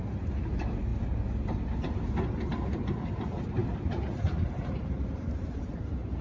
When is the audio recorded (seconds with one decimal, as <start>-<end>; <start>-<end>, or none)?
0.0-3.6